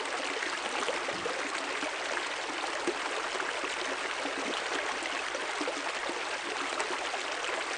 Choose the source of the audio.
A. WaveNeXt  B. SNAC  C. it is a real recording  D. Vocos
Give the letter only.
C